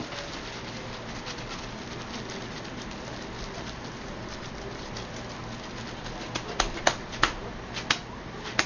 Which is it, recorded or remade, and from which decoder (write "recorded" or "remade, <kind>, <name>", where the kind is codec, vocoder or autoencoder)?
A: recorded